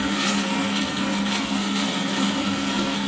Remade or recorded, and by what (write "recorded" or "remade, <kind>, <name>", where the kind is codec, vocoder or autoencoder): remade, codec, SNAC